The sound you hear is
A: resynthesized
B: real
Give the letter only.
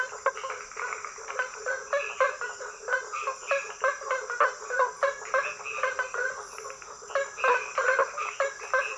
B